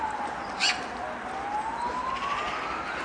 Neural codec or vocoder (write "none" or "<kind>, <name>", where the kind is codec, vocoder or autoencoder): none